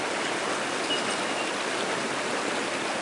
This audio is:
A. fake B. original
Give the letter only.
B